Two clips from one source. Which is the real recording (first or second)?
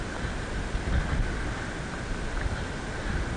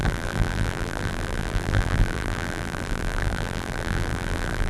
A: first